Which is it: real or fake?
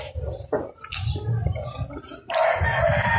real